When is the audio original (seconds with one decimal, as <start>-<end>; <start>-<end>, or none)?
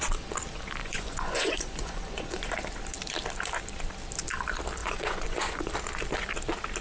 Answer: 0.0-0.8; 2.5-4.8; 5.7-6.8